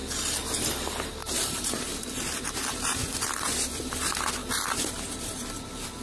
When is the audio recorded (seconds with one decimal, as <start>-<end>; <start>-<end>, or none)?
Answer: 0.0-0.7